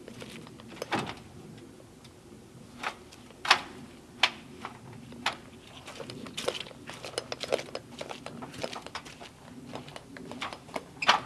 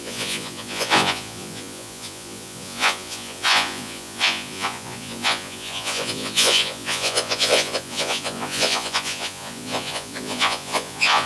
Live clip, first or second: first